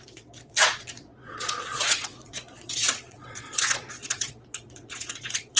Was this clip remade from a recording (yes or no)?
yes